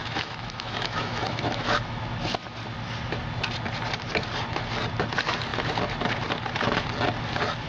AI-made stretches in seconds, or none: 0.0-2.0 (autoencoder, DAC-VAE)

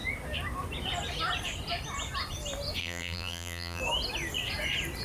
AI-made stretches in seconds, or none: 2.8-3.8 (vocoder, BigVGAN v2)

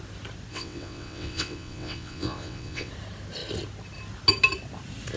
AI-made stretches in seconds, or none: 0.5-2.9 (vocoder, WaveNeXt)

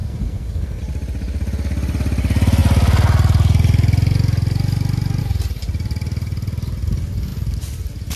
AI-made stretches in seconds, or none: 0.0-0.8 (codec, SNAC)